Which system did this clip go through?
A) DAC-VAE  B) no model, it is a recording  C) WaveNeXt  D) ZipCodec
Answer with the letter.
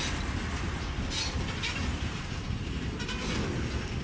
B